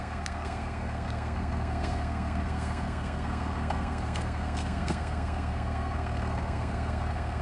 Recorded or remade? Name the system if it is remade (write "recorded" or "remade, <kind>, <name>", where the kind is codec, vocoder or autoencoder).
remade, codec, SNAC